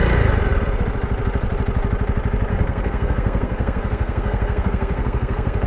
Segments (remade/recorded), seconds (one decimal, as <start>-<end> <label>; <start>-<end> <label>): 0.0-2.5 recorded; 2.5-5.7 remade